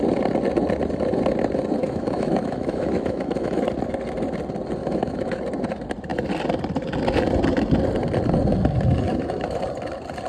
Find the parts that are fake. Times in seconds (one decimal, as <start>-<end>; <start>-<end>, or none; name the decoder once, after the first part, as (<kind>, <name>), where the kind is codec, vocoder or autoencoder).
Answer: 1.8-3.6 (autoencoder, DAC-VAE); 4.8-5.4; 9.1-9.6